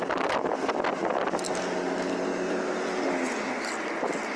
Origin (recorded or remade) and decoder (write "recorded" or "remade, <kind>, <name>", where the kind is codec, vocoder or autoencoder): recorded